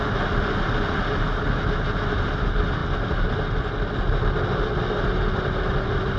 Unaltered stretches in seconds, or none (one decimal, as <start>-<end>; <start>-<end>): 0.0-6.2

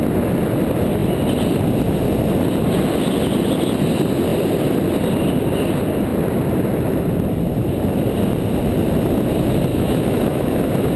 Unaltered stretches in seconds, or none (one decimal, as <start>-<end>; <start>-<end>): 0.0-9.7; 10.6-11.0

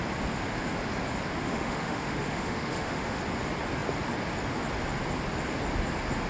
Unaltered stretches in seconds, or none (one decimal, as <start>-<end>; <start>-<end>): 0.0-1.4; 3.2-6.3